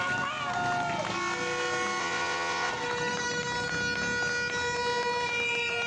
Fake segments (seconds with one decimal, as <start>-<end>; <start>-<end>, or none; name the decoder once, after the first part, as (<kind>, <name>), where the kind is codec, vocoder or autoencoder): 2.0-2.7 (vocoder, WaveNeXt)